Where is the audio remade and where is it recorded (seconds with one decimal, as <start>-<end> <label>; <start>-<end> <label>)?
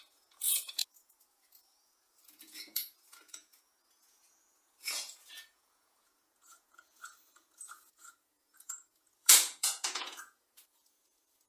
0.0-11.5 remade